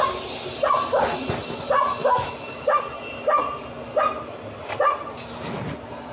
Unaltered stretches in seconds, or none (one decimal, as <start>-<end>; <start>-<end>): 0.0-6.1